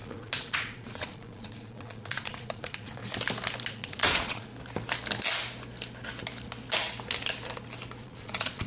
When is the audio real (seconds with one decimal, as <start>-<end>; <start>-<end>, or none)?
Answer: 3.0-3.7; 4.5-8.0